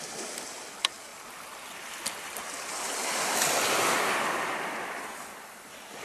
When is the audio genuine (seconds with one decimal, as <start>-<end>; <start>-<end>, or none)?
0.0-6.0